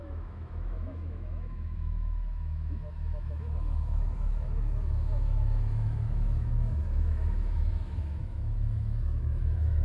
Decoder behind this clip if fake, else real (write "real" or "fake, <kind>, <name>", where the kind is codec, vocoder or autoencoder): fake, autoencoder, DAC-VAE